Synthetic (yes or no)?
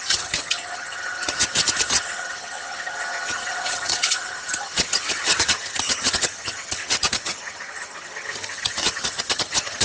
yes